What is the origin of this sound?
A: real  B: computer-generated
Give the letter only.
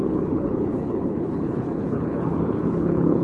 B